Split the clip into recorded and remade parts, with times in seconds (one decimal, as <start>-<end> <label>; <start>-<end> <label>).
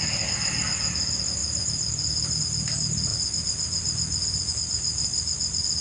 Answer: 0.0-5.8 recorded